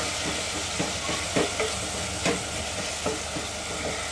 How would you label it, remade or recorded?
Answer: recorded